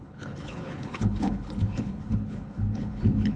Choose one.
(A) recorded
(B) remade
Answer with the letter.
B